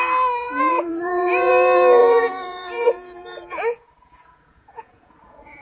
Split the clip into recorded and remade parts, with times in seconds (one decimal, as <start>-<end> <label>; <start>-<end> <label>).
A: 0.0-0.4 recorded; 0.4-1.5 remade; 1.5-2.0 recorded; 2.0-5.6 remade